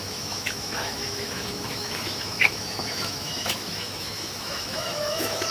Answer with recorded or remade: remade